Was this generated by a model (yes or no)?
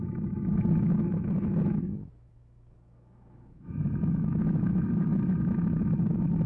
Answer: yes